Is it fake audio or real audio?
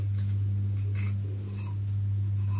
real